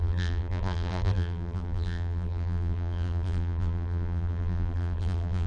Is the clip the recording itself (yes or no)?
no